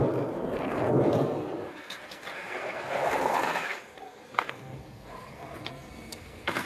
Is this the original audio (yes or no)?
no